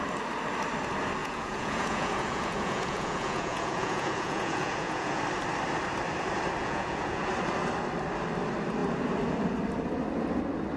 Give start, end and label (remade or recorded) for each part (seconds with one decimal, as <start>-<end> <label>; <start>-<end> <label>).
0.0-1.2 recorded; 1.2-5.2 remade; 5.2-6.6 recorded; 6.6-7.3 remade; 7.3-10.8 recorded